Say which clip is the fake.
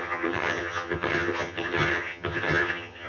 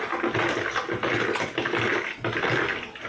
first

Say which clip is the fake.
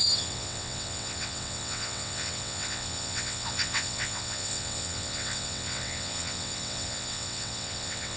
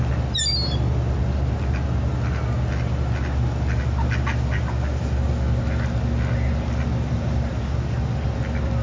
first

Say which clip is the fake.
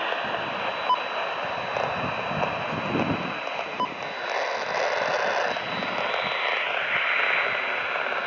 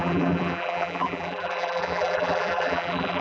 second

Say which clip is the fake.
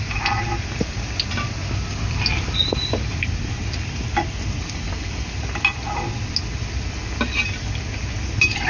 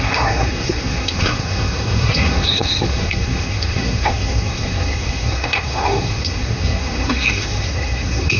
second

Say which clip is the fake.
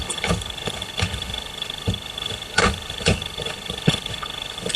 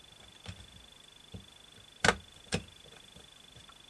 first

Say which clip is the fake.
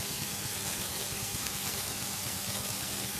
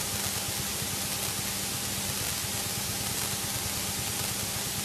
first